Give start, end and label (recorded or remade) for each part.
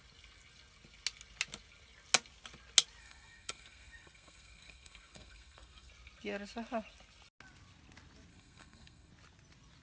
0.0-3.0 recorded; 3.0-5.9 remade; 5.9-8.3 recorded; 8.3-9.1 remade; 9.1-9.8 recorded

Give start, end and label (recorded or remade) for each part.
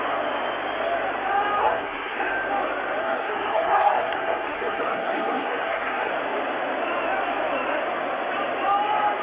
0.0-1.6 recorded; 1.6-2.3 remade; 2.3-3.0 recorded; 3.0-6.1 remade; 6.1-9.2 recorded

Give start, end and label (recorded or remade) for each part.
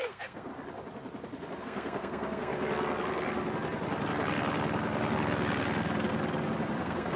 0.0-0.5 remade; 0.5-1.6 recorded; 1.6-2.5 remade; 2.5-6.8 recorded; 6.8-7.2 remade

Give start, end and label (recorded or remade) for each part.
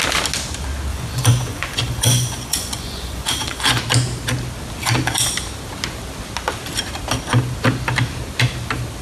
0.0-0.9 recorded; 0.9-3.8 remade; 3.8-9.0 recorded